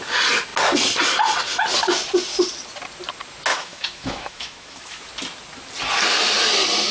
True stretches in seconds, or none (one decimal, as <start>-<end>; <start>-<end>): 0.0-3.5; 5.0-6.9